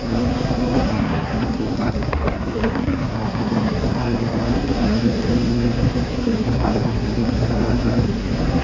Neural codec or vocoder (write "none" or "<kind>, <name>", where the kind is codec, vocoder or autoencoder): codec, SNAC